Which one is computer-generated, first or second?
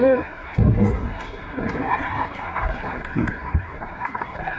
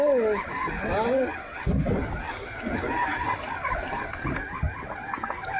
first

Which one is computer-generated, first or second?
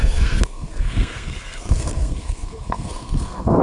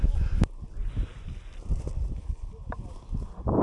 first